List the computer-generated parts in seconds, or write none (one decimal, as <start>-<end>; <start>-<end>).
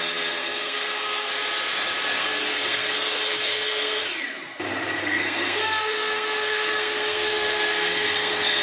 0.4-1.3; 2.2-4.0; 5.0-8.6